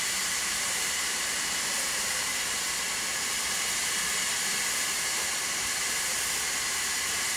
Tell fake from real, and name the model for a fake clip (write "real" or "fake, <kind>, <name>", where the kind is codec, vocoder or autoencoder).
real